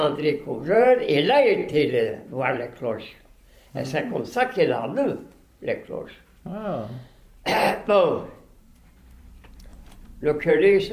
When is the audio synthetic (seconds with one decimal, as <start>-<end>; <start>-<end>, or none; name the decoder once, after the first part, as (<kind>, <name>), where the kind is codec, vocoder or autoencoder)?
0.0-6.5 (vocoder, BigVGAN v2); 7.7-10.9